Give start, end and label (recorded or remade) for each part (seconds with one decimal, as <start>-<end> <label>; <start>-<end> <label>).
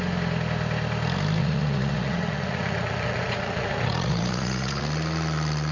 0.0-1.4 recorded; 1.4-4.8 remade; 4.8-5.7 recorded